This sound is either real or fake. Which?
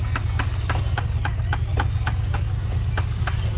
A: real